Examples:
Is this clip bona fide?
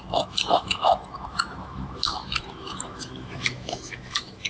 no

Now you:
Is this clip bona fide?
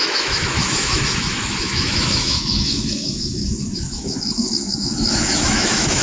no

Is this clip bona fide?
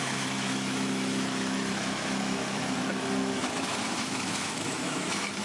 no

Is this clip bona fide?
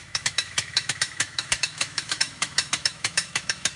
no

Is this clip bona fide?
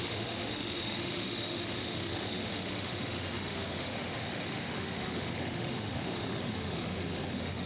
no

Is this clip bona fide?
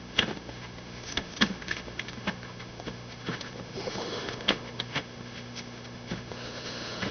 no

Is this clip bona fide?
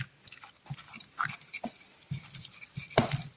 yes